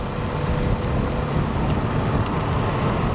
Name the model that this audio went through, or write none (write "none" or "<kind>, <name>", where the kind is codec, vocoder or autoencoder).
none